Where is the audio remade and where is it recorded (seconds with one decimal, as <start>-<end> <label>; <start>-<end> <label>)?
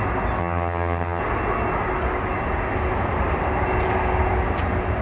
0.0-0.4 recorded; 0.4-1.2 remade; 1.2-5.0 recorded